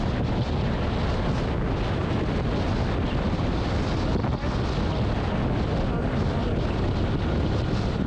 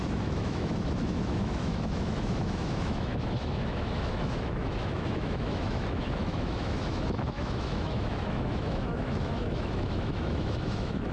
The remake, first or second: second